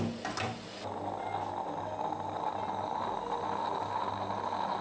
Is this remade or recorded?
recorded